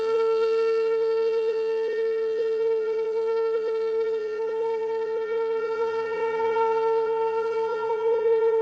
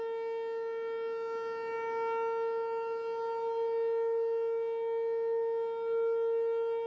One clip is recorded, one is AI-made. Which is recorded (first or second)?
second